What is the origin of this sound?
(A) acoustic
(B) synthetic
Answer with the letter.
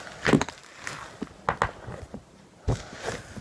A